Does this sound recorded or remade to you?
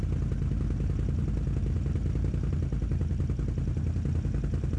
recorded